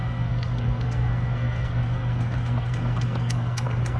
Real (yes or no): no